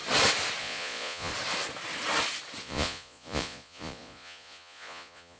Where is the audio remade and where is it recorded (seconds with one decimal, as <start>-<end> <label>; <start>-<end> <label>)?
0.0-0.6 recorded; 0.6-1.3 remade; 1.3-2.6 recorded; 2.6-5.4 remade